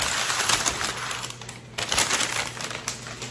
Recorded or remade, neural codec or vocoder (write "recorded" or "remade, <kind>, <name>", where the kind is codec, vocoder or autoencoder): recorded